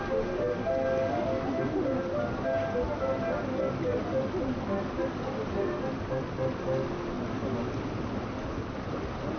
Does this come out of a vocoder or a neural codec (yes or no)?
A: no